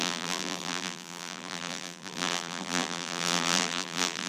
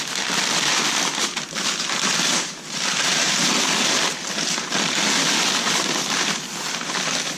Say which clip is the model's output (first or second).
first